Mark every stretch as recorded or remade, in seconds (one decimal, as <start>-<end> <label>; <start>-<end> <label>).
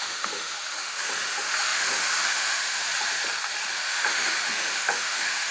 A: 0.0-2.9 remade; 2.9-3.7 recorded; 3.7-5.5 remade